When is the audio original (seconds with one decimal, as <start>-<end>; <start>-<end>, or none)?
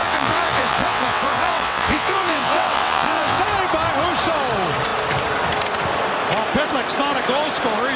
3.4-8.0